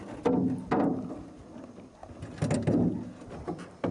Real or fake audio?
real